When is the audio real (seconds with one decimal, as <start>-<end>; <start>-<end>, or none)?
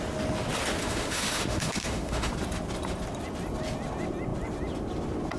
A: 0.0-0.8; 2.3-5.4